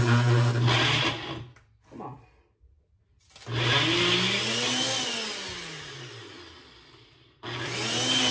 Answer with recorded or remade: recorded